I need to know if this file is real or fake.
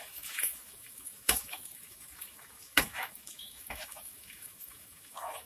fake